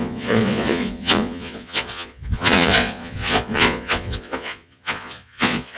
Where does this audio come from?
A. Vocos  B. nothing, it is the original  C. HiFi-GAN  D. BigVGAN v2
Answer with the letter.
A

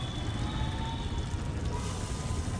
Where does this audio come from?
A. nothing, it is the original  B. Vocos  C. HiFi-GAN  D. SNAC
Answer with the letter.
A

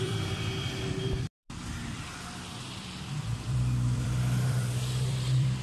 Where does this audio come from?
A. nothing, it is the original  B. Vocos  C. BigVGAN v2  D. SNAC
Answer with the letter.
C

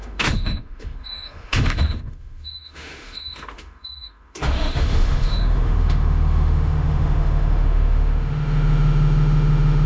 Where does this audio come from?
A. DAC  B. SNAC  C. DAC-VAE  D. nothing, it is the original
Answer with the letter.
C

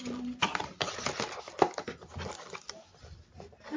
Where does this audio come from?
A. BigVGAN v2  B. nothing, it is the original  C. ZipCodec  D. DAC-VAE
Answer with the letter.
B